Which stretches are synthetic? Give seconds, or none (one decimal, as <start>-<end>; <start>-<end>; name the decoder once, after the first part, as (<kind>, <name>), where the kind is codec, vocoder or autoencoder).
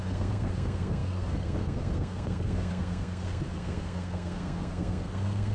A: 0.0-5.5 (codec, SNAC)